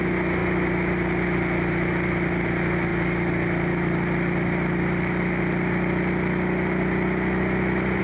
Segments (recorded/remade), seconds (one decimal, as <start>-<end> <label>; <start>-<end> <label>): 0.0-8.0 recorded